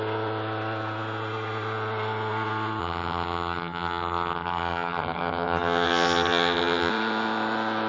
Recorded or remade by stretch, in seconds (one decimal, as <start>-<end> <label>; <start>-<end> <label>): 0.0-2.8 recorded; 2.8-6.9 remade; 6.9-7.9 recorded